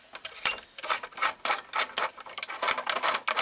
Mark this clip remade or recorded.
recorded